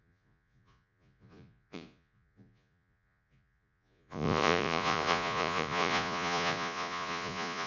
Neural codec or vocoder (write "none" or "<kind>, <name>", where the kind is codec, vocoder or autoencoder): vocoder, Vocos